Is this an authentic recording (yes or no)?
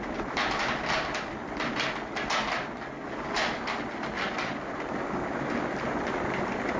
yes